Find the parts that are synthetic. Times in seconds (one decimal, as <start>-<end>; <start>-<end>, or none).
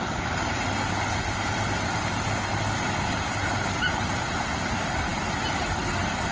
none